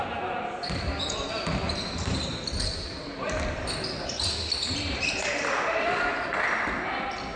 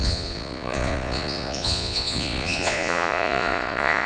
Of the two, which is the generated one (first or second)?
second